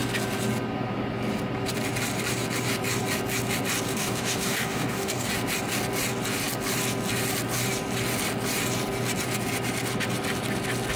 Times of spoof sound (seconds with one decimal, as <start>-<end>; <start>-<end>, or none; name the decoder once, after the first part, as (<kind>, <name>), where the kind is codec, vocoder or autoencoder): 3.9-5.3 (codec, DAC)